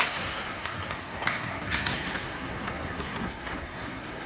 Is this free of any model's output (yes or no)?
no